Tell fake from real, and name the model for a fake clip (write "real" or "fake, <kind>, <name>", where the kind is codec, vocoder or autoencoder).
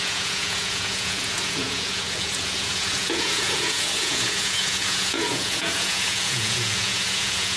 fake, vocoder, Vocos